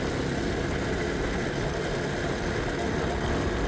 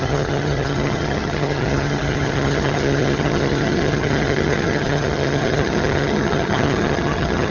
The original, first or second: first